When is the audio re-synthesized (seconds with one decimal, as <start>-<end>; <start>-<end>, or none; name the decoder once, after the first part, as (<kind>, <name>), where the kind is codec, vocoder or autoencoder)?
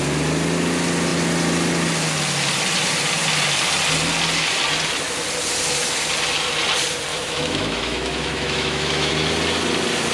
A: 7.1-9.1 (autoencoder, DAC-VAE)